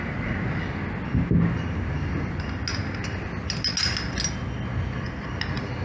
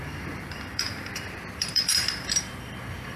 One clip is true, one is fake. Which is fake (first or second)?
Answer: second